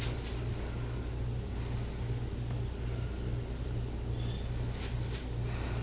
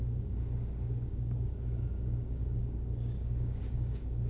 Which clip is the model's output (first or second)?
second